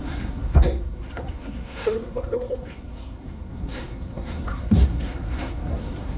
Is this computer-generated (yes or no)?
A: yes